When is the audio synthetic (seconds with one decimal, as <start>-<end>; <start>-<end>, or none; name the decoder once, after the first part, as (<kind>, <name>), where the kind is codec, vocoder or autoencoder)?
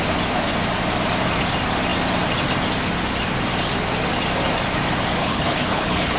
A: 5.2-6.2 (codec, HILCodec)